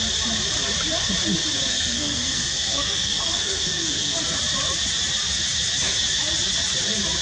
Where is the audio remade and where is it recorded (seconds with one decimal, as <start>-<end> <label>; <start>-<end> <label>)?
0.0-1.7 recorded; 1.7-4.2 remade; 4.2-7.2 recorded